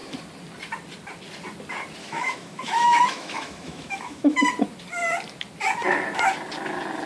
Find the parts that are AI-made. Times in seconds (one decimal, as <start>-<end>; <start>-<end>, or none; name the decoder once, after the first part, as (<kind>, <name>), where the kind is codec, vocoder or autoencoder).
2.0-4.4 (autoencoder, DAC-VAE)